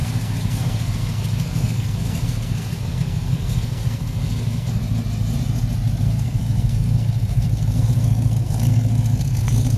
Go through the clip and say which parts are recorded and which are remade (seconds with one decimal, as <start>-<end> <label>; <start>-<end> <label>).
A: 0.0-4.8 remade; 4.8-6.0 recorded; 6.0-9.8 remade